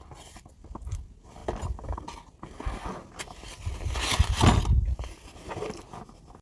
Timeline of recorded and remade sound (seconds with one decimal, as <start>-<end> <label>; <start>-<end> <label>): 0.0-6.4 recorded